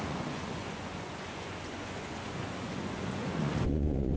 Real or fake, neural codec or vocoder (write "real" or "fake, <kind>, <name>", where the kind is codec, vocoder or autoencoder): fake, vocoder, Vocos